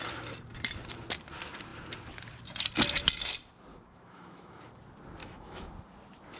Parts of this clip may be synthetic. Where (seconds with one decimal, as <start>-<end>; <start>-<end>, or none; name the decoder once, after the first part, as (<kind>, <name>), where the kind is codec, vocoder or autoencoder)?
3.7-4.6 (autoencoder, DAC-VAE); 5.2-5.7